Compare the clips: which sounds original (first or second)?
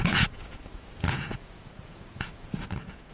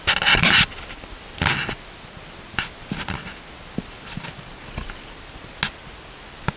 second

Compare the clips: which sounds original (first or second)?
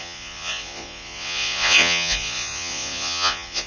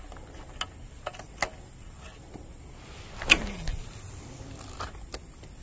second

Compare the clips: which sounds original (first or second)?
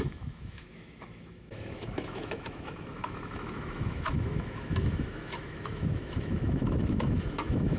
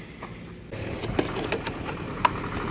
second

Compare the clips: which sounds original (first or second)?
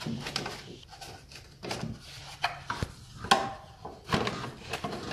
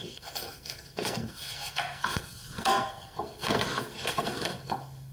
first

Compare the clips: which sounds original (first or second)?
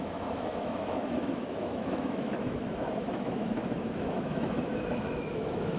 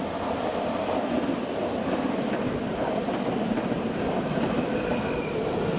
second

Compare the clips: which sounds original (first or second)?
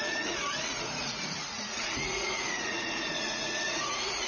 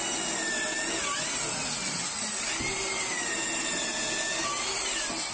second